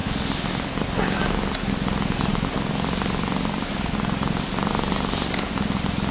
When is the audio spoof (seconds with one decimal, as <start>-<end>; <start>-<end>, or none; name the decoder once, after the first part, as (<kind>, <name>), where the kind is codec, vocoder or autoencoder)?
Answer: none